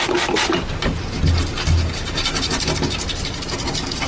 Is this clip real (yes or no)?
yes